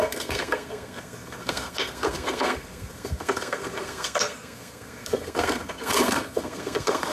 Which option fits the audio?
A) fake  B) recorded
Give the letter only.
A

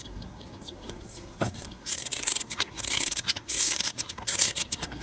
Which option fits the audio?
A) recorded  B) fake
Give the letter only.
B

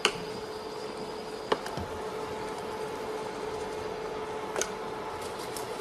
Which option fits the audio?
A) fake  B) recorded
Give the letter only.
B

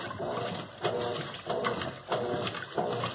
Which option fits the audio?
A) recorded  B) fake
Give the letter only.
A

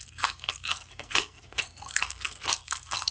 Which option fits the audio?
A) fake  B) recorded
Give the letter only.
A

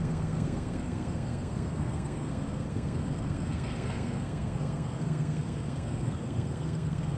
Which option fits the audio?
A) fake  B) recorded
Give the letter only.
A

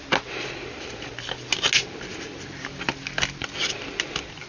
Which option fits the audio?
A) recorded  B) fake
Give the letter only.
A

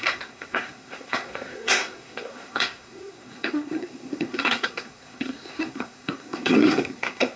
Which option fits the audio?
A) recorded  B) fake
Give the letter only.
B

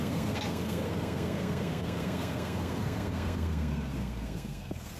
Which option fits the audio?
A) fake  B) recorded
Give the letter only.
A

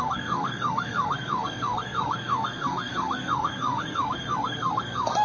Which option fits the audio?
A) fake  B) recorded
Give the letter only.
A